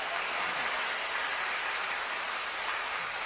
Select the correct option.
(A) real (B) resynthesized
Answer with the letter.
A